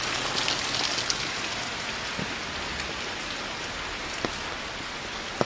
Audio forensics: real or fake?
real